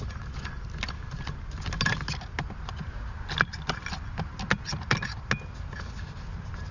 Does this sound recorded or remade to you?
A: recorded